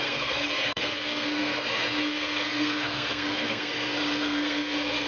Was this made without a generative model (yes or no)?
no